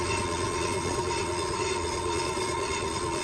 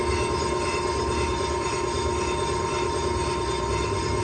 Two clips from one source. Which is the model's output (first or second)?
first